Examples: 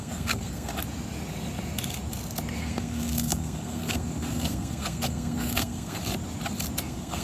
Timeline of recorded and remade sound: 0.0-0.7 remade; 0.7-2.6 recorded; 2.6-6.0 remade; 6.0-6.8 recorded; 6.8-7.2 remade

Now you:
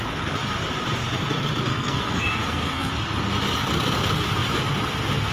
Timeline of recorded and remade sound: 0.0-1.7 recorded; 1.7-2.9 remade; 2.9-5.3 recorded

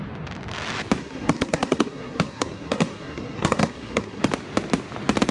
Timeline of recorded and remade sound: 0.0-1.0 recorded; 1.0-4.2 remade; 4.2-5.3 recorded

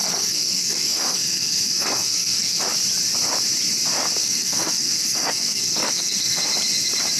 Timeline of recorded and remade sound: 0.0-2.6 remade; 2.6-4.2 recorded; 4.2-6.4 remade; 6.4-7.2 recorded

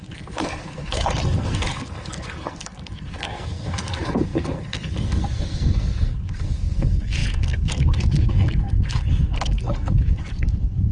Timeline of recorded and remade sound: 0.0-10.9 remade

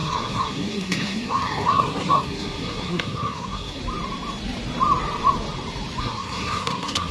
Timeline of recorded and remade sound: 0.0-3.8 remade; 3.8-6.0 recorded; 6.0-7.1 remade